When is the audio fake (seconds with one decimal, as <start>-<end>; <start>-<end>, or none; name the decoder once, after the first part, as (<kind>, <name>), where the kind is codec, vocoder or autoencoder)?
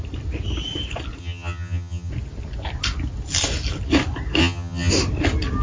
1.2-2.1 (vocoder, HiFi-GAN); 4.4-4.9